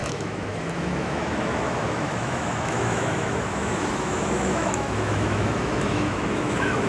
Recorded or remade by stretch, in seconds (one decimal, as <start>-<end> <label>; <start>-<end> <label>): 0.0-6.9 remade